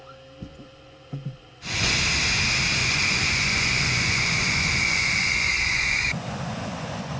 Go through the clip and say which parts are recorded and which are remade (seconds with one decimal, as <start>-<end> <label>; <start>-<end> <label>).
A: 0.0-0.5 recorded; 0.5-2.0 remade; 2.0-2.8 recorded; 2.8-7.2 remade